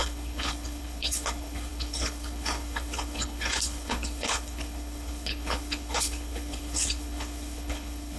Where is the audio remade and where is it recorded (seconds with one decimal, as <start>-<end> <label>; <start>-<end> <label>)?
0.0-8.2 remade